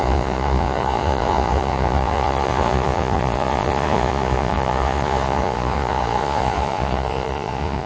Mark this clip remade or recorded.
remade